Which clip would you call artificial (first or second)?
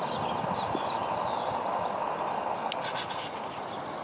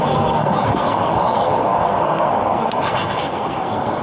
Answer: second